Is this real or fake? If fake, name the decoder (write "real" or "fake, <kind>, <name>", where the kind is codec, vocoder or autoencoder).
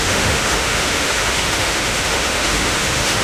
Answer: fake, autoencoder, DAC-VAE